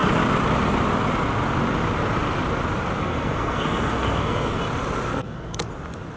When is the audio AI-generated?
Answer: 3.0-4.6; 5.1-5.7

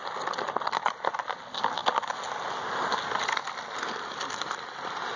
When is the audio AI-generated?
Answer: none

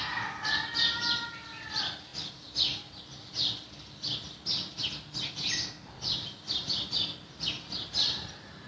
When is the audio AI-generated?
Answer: none

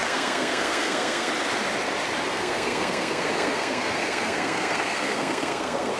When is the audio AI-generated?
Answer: 0.0-1.3; 2.3-6.0

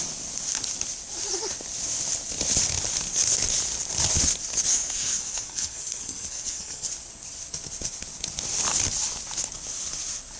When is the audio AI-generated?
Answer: 4.7-6.9